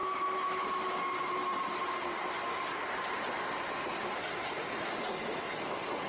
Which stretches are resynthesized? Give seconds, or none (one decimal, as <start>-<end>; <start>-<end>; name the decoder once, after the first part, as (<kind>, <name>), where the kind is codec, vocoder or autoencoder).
none